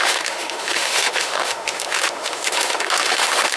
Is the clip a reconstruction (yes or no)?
yes